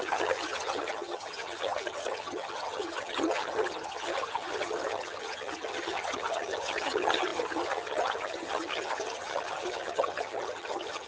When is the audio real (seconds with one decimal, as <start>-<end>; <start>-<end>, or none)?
none